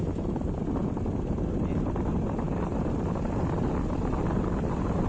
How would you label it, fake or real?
real